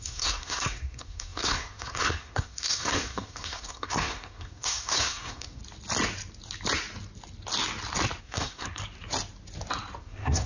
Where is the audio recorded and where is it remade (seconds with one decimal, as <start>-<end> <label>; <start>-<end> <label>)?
0.0-5.6 remade; 5.6-8.2 recorded; 8.2-8.8 remade; 8.8-10.0 recorded; 10.0-10.5 remade